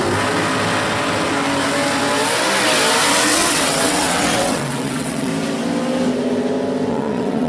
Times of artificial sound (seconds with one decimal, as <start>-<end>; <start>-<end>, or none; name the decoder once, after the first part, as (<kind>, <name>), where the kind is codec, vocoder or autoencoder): 3.1-5.3 (vocoder, WaveNeXt); 6.9-7.5